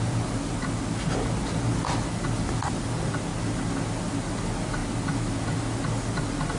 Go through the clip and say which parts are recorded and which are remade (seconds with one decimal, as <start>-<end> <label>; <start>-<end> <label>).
0.0-6.6 recorded